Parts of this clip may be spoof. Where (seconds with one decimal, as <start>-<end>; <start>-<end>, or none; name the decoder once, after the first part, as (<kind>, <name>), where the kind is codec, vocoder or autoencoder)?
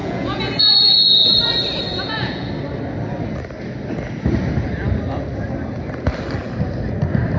0.0-1.4 (vocoder, Vocos); 1.9-2.5